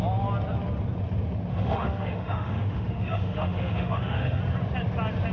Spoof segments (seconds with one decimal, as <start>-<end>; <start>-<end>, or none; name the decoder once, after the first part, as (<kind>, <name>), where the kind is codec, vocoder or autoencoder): 1.5-4.4 (autoencoder, DAC-VAE)